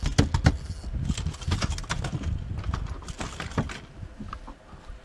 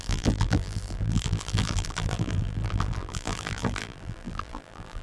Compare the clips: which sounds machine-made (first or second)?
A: second